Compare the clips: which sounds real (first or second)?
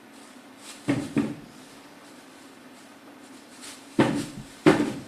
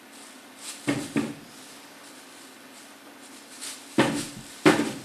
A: second